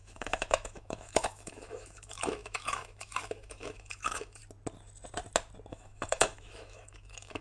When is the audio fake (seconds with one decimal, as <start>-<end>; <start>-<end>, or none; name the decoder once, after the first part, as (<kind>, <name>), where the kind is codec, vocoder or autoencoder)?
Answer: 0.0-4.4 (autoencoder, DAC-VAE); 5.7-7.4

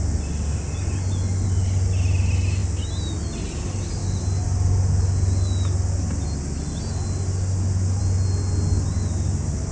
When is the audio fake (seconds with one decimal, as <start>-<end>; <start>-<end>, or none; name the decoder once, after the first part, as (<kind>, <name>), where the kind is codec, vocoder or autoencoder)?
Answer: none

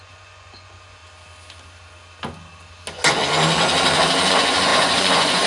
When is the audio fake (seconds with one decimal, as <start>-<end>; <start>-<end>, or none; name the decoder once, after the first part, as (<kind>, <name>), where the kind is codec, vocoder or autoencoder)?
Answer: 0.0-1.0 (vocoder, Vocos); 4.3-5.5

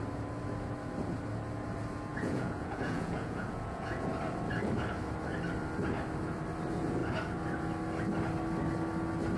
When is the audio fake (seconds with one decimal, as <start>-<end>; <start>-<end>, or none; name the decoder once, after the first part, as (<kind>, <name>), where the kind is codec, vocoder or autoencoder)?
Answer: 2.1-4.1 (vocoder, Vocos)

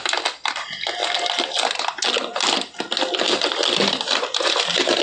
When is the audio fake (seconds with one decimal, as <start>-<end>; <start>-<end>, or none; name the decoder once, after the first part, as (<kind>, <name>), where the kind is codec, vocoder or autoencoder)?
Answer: none

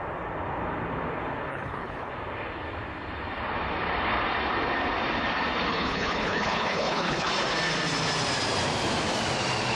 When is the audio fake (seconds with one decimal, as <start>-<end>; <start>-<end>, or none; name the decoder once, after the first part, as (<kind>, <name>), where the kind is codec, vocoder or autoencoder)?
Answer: 1.5-2.1 (codec, HILCodec); 5.7-7.3

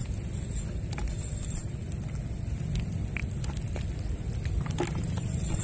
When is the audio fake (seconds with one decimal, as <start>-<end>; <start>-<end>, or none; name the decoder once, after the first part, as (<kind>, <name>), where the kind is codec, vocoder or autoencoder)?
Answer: none